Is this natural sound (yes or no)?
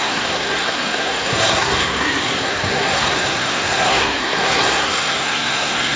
no